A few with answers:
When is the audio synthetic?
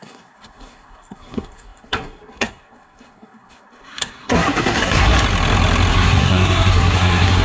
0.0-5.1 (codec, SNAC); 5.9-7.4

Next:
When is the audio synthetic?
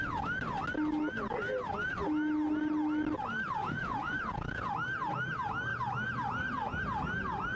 3.6-4.7 (vocoder, Vocos)